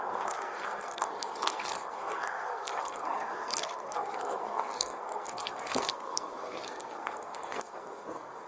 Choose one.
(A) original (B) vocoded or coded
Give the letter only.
B